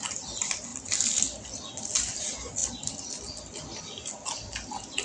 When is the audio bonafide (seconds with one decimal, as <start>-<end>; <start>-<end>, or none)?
0.0-0.7; 2.2-2.6; 3.8-5.0